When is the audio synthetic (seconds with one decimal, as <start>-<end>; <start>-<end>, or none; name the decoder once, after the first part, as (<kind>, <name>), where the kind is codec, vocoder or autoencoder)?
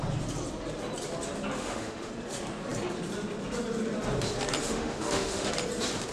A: 1.6-2.1 (autoencoder, DAC-VAE); 4.6-5.5